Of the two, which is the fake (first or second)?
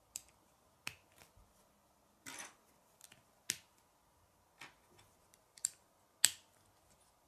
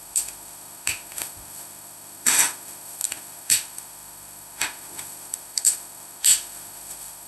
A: second